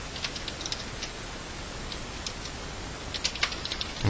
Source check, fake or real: real